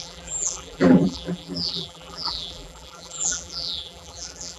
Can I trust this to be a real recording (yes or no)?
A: no